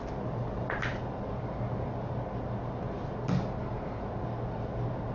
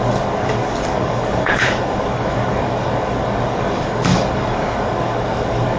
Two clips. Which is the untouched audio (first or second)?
first